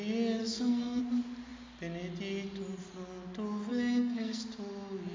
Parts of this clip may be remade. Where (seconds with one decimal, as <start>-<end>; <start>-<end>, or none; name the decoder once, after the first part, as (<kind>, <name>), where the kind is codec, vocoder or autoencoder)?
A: 0.4-1.0 (codec, SNAC); 3.7-4.4

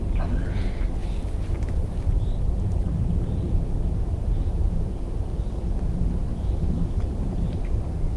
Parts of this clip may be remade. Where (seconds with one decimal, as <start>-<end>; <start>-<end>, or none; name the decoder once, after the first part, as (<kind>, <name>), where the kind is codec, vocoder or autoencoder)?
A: 1.0-5.7 (vocoder, BigVGAN v2); 6.3-7.7

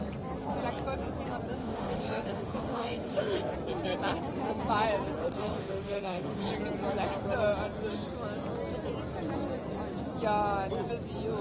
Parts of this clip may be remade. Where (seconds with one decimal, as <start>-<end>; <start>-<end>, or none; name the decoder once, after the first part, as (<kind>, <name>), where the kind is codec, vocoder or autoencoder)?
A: 1.6-3.4 (autoencoder, DAC-VAE); 5.2-6.5

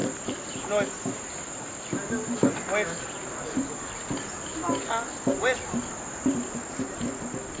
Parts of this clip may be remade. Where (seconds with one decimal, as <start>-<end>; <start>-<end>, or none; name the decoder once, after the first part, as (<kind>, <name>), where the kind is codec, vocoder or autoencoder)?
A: none

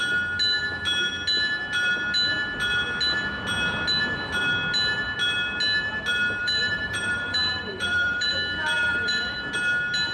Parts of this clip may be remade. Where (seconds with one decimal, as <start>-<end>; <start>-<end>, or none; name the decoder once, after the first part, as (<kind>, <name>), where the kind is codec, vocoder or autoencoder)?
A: 6.4-8.3 (vocoder, BigVGAN v2); 8.8-9.4

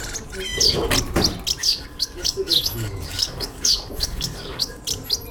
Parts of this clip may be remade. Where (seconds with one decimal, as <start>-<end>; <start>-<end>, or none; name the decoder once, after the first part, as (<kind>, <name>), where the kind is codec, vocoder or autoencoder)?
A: 1.6-4.8 (codec, DAC)

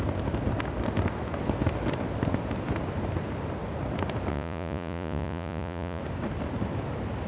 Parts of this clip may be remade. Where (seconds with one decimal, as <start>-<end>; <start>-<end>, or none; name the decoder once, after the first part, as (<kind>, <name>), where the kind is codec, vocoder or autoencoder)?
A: 4.3-6.0 (vocoder, Vocos)

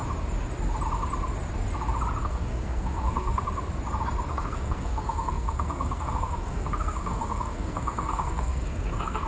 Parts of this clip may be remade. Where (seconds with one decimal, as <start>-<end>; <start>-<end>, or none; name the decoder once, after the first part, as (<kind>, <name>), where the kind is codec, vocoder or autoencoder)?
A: 2.2-3.4 (codec, SNAC); 4.3-9.3